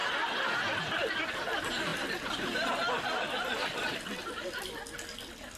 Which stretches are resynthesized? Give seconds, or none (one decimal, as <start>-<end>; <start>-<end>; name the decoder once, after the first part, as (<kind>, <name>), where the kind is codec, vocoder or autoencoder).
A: none